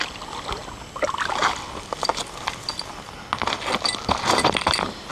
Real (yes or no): yes